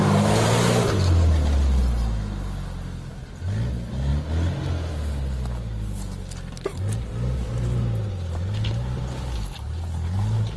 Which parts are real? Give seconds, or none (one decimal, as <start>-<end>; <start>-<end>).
0.0-10.6